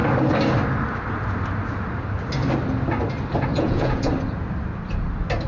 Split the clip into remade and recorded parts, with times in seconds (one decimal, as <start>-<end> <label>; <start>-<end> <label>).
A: 0.0-3.5 recorded; 3.5-4.1 remade; 4.1-5.5 recorded